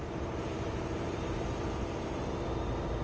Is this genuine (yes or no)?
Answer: no